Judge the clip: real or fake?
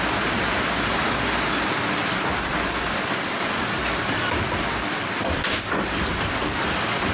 fake